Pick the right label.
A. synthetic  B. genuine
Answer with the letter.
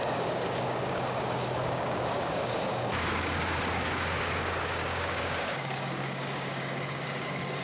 A